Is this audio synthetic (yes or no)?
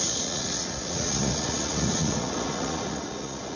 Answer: yes